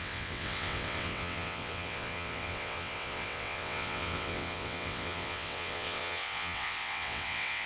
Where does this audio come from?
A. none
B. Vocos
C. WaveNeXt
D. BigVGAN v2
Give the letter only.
C